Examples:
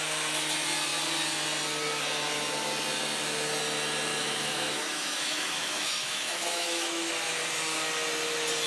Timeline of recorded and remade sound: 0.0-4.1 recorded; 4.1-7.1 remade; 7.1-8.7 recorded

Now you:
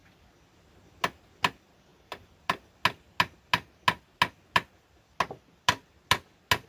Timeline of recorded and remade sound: 0.0-6.7 recorded

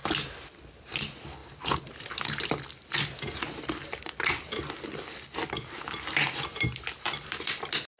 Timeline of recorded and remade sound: 0.0-8.0 recorded

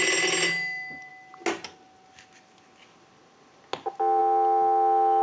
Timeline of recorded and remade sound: 0.0-5.2 recorded

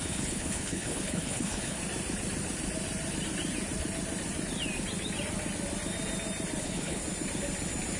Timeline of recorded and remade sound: 0.0-1.8 remade; 1.8-6.6 recorded; 6.6-7.0 remade; 7.0-8.0 recorded

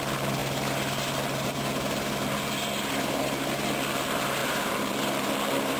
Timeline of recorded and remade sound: 0.0-4.4 recorded; 4.4-4.9 remade; 4.9-5.8 recorded